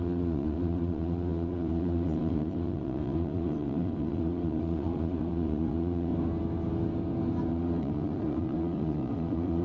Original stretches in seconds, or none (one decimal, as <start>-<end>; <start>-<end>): 6.1-7.5